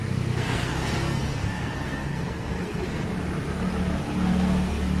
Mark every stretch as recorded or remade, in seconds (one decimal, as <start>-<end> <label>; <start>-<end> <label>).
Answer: 0.0-3.1 remade; 3.1-4.3 recorded; 4.3-5.0 remade